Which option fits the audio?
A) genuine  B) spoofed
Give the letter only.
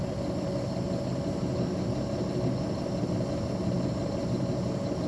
A